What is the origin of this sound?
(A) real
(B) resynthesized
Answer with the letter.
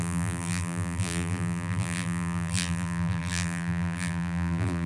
B